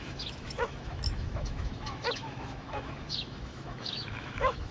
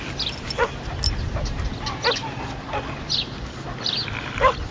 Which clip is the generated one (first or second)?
first